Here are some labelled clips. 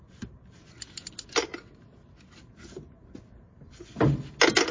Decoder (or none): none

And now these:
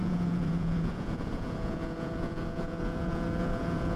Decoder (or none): vocoder, Vocos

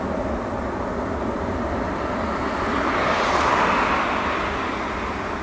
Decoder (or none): none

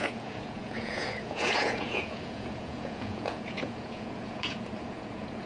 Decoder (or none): vocoder, Vocos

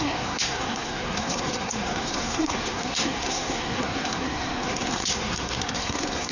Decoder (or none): codec, SNAC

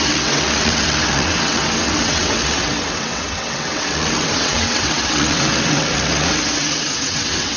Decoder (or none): vocoder, WaveNeXt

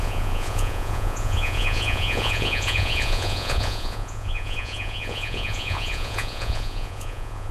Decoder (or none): vocoder, Vocos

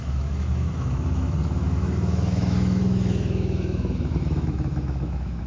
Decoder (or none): autoencoder, DAC-VAE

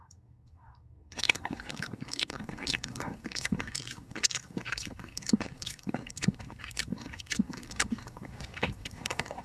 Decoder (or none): codec, SNAC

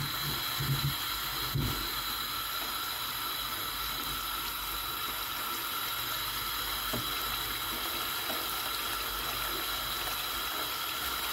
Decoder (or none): none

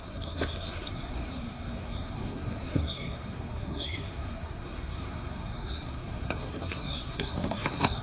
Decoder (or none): codec, SNAC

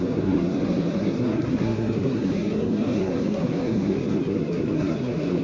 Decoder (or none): codec, SNAC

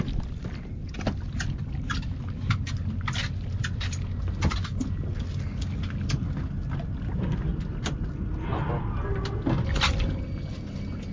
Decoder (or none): none